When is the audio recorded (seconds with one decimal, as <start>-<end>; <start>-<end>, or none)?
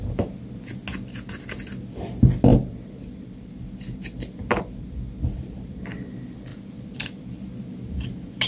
0.0-2.5; 5.9-6.5; 7.7-8.5